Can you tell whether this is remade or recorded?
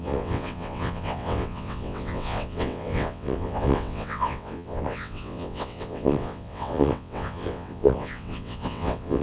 remade